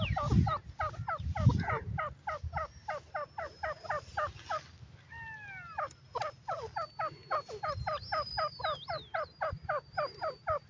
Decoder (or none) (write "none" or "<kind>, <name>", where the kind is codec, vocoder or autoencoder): none